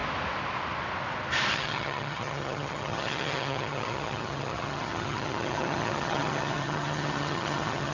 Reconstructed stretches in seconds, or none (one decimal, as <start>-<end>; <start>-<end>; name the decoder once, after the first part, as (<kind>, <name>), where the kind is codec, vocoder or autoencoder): 1.5-7.9 (vocoder, HiFi-GAN)